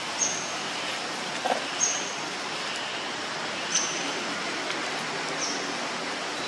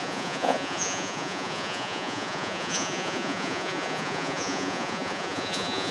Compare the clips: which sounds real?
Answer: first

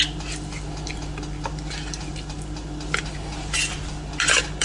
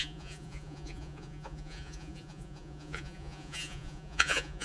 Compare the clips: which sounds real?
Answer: first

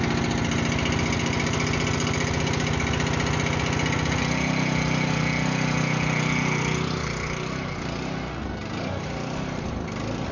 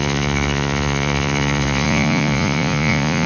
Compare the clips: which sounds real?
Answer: first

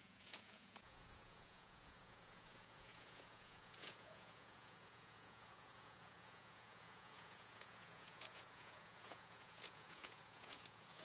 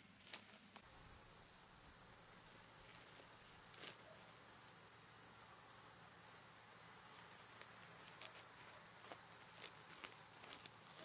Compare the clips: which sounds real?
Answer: second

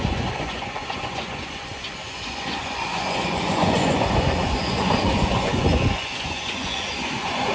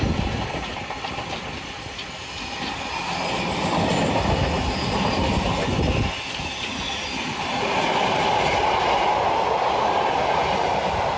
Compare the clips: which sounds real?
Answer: second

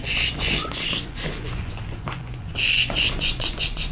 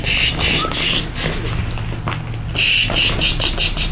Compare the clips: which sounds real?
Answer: second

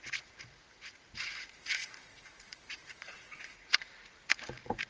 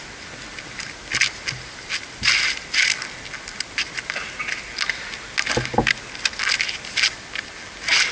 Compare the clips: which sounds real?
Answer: second